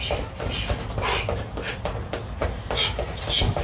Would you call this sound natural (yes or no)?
yes